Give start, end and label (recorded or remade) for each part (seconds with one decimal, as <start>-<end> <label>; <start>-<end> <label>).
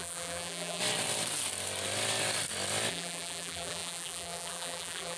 0.0-0.8 remade; 0.8-2.9 recorded; 2.9-5.2 remade